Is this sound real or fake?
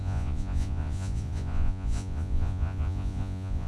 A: fake